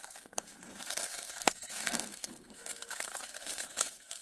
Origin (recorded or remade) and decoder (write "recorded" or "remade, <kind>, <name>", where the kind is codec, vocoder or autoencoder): remade, codec, SNAC